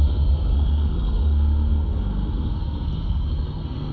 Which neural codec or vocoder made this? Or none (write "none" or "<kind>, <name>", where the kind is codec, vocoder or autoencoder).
codec, SNAC